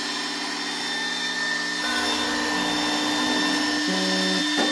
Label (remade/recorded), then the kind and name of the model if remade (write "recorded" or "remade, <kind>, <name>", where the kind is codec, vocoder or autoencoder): recorded